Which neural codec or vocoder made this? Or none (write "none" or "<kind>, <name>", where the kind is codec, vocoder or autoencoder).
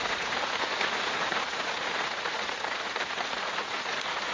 vocoder, Vocos